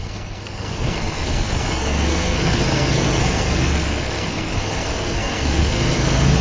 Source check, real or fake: fake